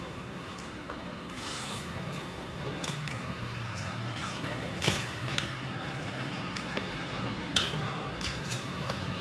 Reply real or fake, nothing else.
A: fake